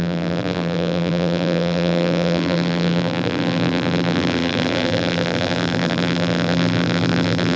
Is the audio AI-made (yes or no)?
yes